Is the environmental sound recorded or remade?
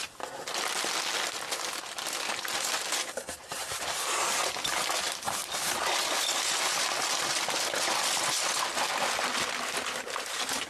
recorded